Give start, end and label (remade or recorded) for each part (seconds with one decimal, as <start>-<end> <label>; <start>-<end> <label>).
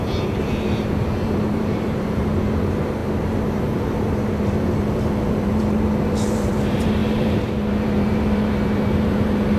0.0-9.6 remade